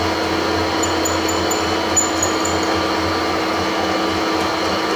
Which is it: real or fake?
real